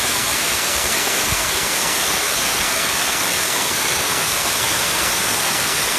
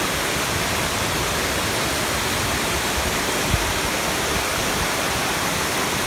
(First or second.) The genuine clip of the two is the second